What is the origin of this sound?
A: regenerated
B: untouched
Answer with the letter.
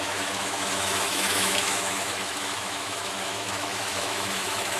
A